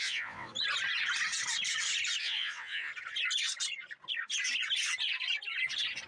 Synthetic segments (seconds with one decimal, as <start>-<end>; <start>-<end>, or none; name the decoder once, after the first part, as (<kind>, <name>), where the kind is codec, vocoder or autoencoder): 0.0-0.5 (vocoder, WaveNeXt); 2.2-2.9